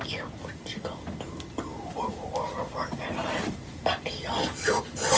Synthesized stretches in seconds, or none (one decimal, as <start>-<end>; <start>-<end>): none